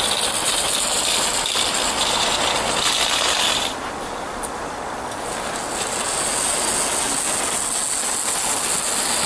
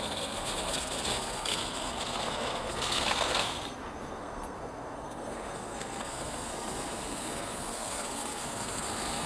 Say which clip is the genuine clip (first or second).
first